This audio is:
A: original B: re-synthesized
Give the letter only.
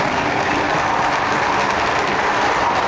B